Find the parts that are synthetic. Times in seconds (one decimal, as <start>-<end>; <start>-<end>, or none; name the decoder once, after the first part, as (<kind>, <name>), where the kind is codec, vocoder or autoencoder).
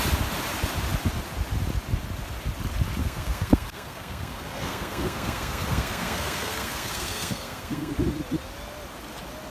3.0-7.9 (codec, SNAC)